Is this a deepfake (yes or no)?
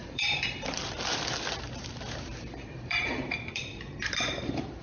yes